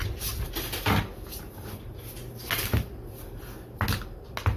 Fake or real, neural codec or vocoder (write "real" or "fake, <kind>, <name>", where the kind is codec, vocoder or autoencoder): real